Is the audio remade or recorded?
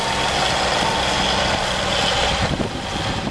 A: recorded